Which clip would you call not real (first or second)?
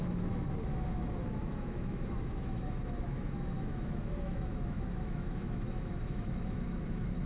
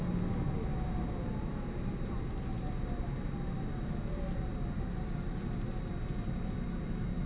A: first